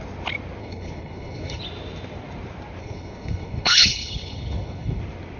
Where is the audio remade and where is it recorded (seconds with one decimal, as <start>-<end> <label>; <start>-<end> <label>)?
0.0-0.6 recorded; 0.6-1.6 remade; 1.6-2.8 recorded; 2.8-5.0 remade; 5.0-5.4 recorded